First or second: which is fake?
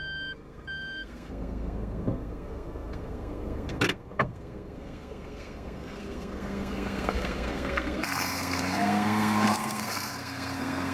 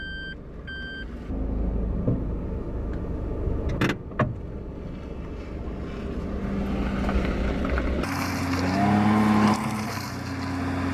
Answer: first